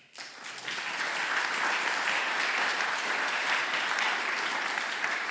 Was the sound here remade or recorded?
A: recorded